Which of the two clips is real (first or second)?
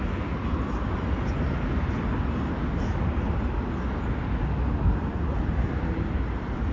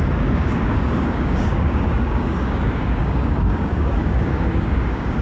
first